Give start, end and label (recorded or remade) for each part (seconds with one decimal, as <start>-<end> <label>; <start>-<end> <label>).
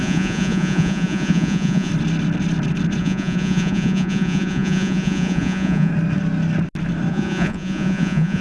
0.0-1.9 remade; 1.9-3.0 recorded; 3.0-5.9 remade; 5.9-7.1 recorded; 7.1-8.4 remade